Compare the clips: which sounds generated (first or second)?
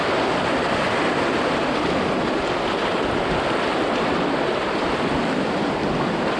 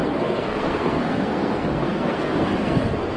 second